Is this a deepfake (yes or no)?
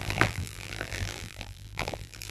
yes